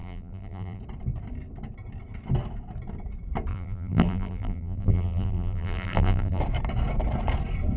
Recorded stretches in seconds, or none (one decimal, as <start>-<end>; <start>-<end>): 0.8-3.5; 6.4-7.8